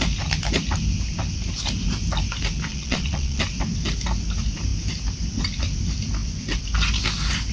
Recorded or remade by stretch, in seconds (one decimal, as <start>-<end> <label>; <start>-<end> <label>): 0.0-2.7 recorded; 2.7-3.4 remade; 3.4-7.5 recorded